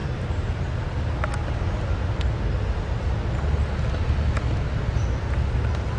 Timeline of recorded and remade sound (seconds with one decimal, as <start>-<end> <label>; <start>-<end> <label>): 0.0-6.0 recorded